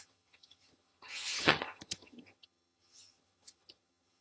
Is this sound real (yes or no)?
no